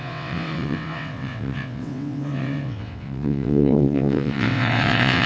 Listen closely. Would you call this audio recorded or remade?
remade